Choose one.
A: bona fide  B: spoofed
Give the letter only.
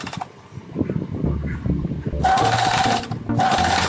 A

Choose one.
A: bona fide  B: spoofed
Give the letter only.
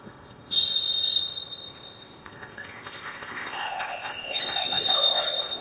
B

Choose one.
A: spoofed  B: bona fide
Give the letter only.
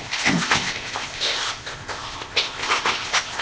A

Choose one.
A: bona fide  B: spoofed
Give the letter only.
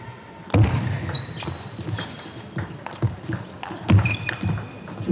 A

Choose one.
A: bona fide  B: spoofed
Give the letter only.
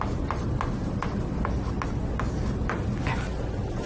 A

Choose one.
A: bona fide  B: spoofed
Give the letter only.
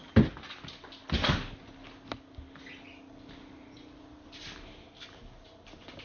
A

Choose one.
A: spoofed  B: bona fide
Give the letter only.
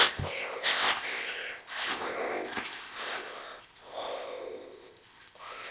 A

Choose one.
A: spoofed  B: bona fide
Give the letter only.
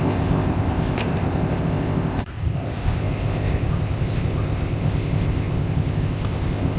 A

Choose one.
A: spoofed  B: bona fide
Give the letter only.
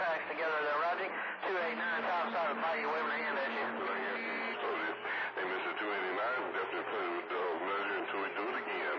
B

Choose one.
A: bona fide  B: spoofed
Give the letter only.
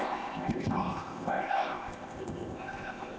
B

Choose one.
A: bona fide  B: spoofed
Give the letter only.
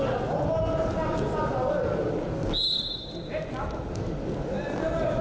A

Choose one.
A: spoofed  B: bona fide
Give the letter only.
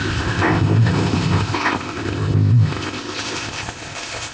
A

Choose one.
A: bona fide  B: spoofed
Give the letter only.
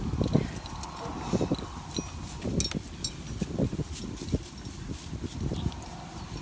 A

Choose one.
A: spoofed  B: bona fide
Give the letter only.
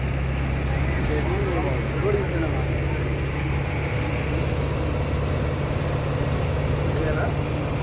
B